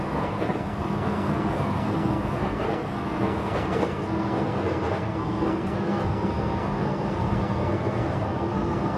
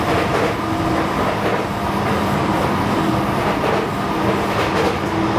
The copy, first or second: first